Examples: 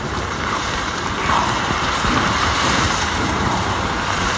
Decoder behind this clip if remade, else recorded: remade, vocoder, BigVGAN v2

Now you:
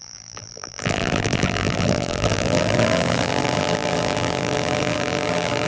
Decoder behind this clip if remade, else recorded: remade, vocoder, BigVGAN v2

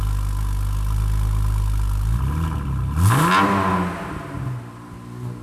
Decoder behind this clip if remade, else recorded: recorded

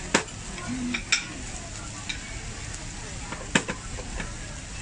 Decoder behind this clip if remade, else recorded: recorded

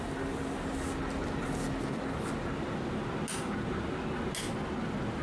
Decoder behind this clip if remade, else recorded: recorded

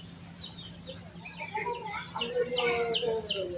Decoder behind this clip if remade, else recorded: recorded